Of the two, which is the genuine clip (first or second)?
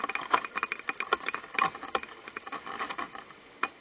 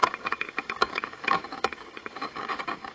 first